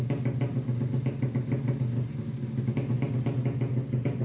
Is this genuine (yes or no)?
yes